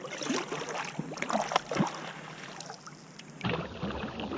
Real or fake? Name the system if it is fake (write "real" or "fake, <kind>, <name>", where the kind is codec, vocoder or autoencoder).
real